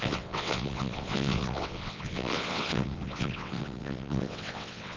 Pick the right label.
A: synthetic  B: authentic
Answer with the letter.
A